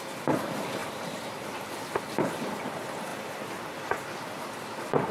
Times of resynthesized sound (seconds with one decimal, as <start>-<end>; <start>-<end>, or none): 0.8-1.7